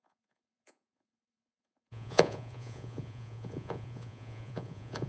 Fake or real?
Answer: fake